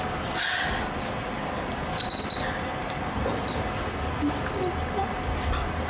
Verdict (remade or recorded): recorded